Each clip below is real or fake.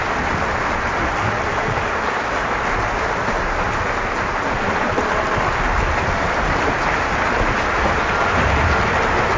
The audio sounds fake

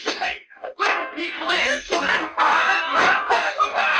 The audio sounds fake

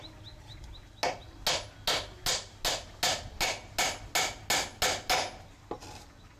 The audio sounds real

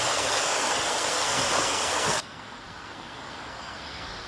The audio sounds fake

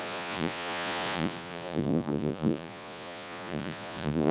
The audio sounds fake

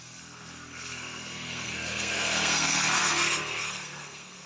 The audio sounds fake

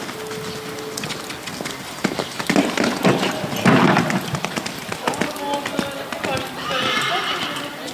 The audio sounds real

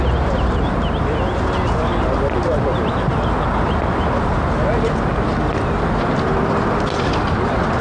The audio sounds real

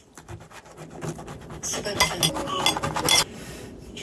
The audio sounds real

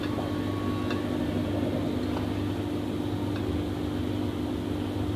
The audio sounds real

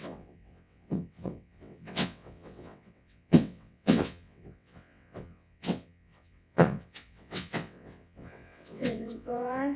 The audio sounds fake